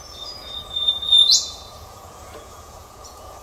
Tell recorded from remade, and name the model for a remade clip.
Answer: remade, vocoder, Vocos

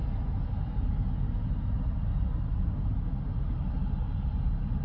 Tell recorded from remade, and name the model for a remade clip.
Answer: recorded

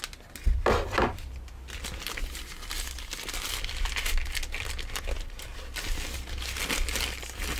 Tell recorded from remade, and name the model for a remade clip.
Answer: recorded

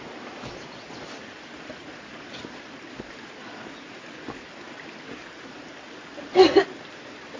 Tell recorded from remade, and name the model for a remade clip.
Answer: recorded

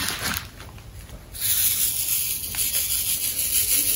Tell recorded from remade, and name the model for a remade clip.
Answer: recorded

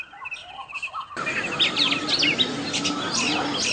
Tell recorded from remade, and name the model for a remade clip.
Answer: recorded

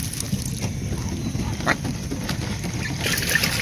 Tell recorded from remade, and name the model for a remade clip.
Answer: recorded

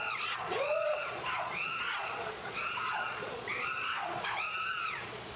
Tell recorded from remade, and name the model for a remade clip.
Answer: remade, vocoder, Vocos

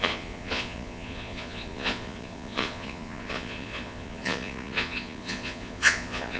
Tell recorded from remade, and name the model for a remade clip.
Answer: remade, vocoder, Vocos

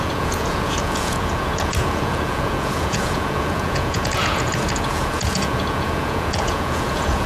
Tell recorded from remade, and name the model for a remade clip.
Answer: remade, vocoder, Vocos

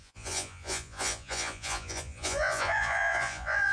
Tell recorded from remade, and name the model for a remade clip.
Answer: remade, vocoder, Vocos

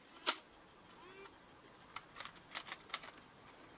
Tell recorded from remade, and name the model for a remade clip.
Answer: recorded